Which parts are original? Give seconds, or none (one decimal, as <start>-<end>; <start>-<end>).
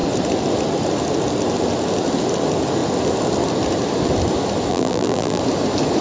0.0-4.7; 5.4-6.0